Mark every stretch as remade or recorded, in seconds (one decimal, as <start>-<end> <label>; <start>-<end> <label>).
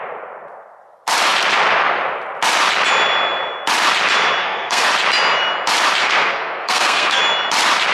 0.0-4.4 recorded; 4.4-4.9 remade; 4.9-6.0 recorded; 6.0-7.2 remade; 7.2-7.9 recorded